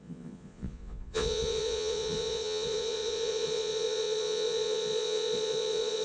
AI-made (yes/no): yes